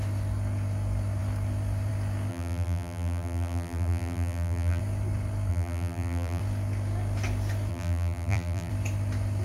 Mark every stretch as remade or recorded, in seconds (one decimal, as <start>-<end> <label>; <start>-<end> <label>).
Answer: 0.0-2.3 recorded; 2.3-4.8 remade; 4.8-5.5 recorded; 5.5-6.4 remade; 6.4-7.7 recorded; 7.7-8.7 remade; 8.7-9.4 recorded